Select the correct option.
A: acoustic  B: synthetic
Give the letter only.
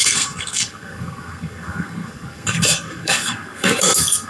B